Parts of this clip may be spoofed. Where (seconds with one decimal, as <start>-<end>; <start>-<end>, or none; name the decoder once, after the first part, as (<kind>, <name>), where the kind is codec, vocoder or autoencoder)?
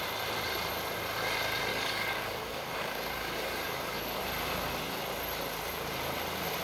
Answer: 1.7-4.2 (codec, DAC)